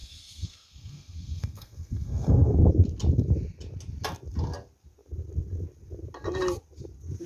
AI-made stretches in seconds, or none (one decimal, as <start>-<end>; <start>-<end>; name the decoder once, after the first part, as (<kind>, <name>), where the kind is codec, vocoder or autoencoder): 0.0-2.7 (codec, SNAC)